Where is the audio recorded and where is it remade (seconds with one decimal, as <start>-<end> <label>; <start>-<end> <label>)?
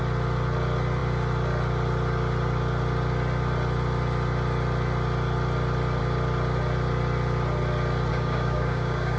0.0-8.1 recorded; 8.1-9.2 remade